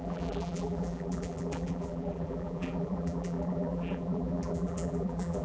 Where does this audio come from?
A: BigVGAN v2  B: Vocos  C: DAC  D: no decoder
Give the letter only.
A